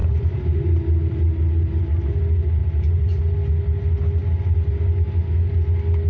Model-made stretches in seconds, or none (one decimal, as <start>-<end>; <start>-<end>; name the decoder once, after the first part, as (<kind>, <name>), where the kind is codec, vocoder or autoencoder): 0.0-0.6 (vocoder, BigVGAN v2); 2.6-3.2